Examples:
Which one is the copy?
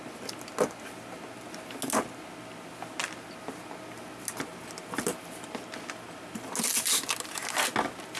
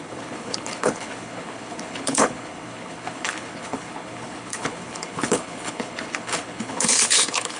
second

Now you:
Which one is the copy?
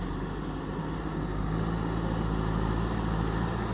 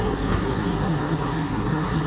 second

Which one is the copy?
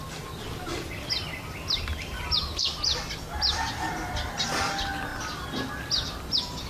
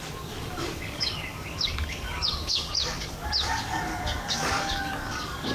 second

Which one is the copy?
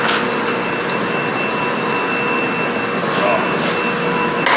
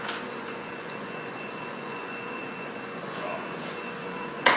second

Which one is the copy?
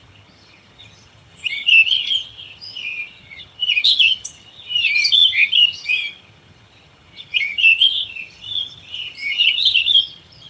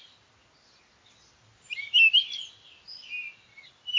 first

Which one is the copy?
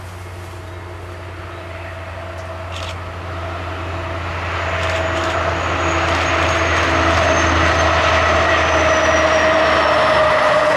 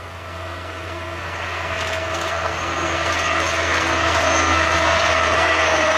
second